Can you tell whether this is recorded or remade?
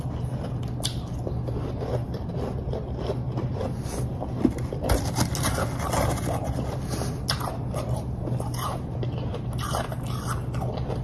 recorded